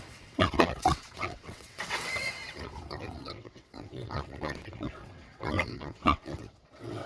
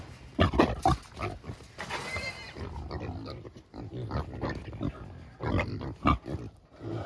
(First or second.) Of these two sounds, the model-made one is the first